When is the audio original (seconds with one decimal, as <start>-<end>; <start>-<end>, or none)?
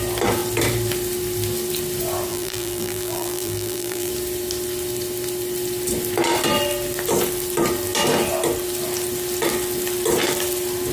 0.0-2.3; 4.1-10.9